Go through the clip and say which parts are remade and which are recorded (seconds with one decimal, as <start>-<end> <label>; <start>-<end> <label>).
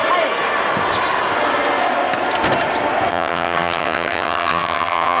0.0-3.1 recorded; 3.1-5.2 remade